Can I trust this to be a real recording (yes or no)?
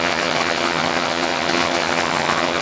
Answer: no